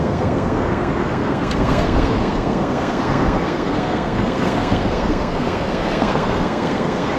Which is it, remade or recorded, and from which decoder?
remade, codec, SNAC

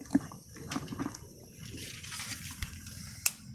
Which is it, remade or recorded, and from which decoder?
recorded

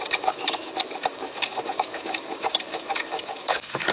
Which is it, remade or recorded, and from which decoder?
remade, codec, DAC